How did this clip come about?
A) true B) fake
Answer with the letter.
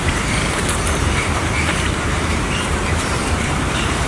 B